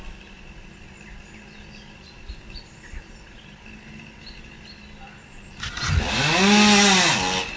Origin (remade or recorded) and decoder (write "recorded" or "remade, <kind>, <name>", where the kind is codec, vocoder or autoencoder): recorded